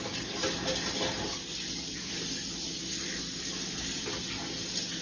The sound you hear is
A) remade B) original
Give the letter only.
B